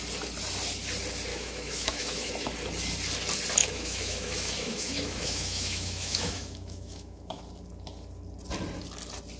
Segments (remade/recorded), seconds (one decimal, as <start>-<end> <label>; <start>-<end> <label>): 0.0-1.3 recorded; 1.3-2.3 remade; 2.3-3.6 recorded; 3.6-7.4 remade; 7.4-9.4 recorded